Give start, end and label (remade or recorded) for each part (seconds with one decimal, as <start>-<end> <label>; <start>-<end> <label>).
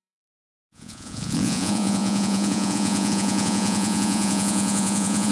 0.0-5.3 remade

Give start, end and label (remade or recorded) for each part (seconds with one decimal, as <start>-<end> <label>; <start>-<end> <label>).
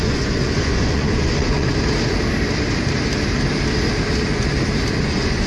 0.0-1.7 remade; 1.7-5.0 recorded; 5.0-5.5 remade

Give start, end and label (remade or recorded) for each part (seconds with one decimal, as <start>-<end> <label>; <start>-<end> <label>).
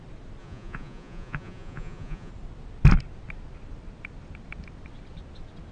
0.0-0.4 recorded; 0.4-2.3 remade; 2.3-5.7 recorded